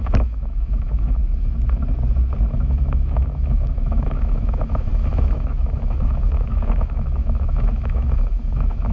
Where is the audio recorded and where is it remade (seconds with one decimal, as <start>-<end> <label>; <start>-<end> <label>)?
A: 0.0-1.2 remade; 1.2-2.5 recorded; 2.5-8.9 remade